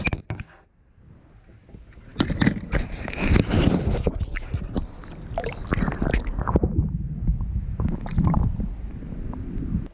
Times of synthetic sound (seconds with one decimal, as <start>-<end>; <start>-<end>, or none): none